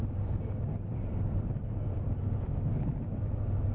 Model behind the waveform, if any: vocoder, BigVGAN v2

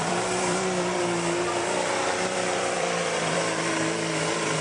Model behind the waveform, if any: vocoder, BigVGAN v2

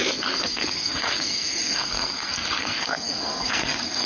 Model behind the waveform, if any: codec, SNAC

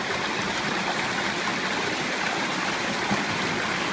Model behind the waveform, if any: none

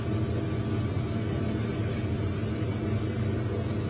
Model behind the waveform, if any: none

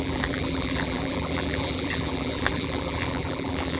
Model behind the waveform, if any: vocoder, BigVGAN v2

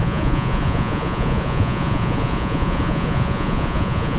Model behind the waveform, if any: vocoder, Vocos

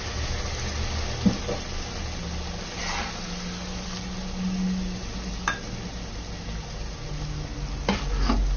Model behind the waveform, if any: none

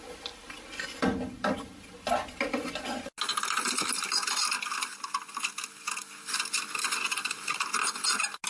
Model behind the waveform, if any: none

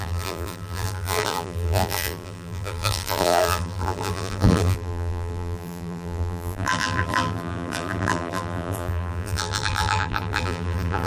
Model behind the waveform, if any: vocoder, BigVGAN v2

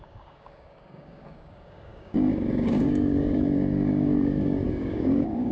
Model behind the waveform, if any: codec, DAC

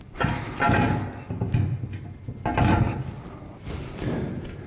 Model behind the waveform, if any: none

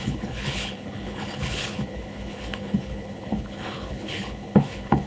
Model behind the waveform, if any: codec, HILCodec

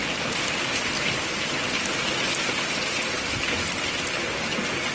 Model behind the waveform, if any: none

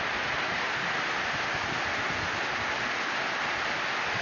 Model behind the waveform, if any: none